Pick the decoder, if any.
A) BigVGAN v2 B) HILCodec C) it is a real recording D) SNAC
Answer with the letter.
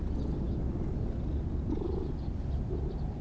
C